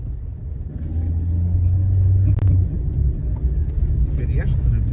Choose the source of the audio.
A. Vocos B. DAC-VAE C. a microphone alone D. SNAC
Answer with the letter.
C